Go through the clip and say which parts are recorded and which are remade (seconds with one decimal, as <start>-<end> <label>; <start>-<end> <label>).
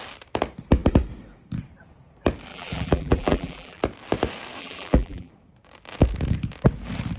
0.0-2.5 recorded; 2.5-3.8 remade; 3.8-4.6 recorded; 4.6-5.3 remade; 5.3-7.2 recorded